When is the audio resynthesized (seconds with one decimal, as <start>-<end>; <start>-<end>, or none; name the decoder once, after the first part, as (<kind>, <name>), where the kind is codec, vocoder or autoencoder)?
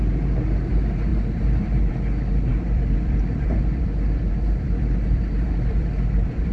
2.5-6.5 (vocoder, BigVGAN v2)